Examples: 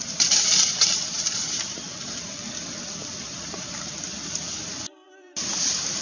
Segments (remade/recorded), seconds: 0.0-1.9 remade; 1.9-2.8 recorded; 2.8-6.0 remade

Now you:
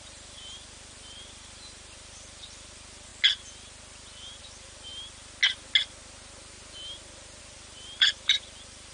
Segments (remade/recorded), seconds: 0.0-3.1 remade; 3.1-4.4 recorded; 4.4-4.9 remade; 4.9-7.4 recorded; 7.4-8.9 remade